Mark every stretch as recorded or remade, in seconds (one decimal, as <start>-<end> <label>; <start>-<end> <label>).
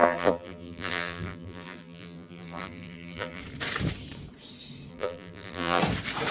0.0-3.4 remade; 3.4-4.9 recorded; 4.9-5.8 remade; 5.8-6.3 recorded